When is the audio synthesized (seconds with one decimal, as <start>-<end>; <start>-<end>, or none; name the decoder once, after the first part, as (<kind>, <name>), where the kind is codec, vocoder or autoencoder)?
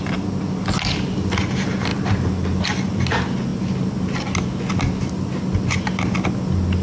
none